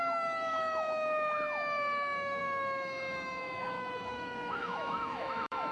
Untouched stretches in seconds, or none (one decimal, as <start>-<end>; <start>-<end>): none